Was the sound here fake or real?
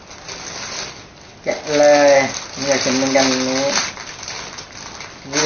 real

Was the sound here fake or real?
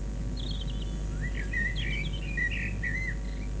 real